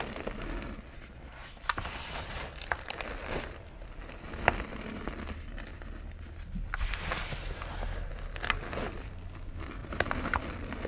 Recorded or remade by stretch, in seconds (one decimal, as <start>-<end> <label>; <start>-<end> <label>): 0.0-1.4 recorded; 1.4-4.3 remade; 4.3-9.8 recorded; 9.8-10.4 remade; 10.4-10.9 recorded